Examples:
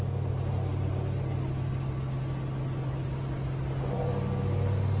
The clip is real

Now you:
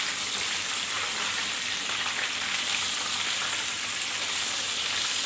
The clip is fake